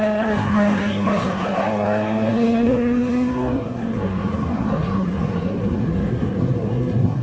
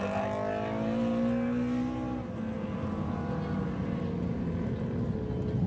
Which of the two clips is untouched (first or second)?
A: second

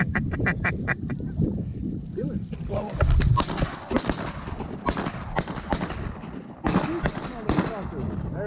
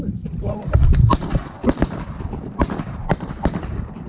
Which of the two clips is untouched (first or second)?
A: first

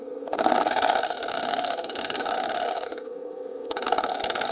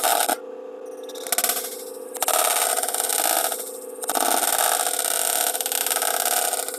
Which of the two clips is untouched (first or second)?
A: second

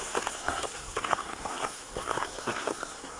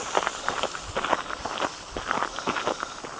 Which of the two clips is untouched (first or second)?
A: second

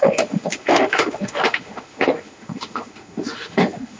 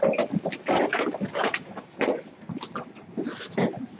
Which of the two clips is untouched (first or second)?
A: second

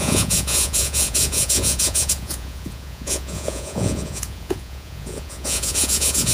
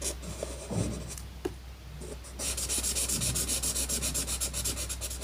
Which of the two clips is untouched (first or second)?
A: second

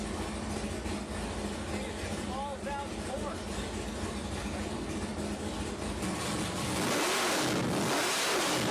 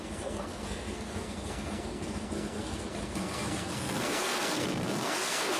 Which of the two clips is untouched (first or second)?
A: first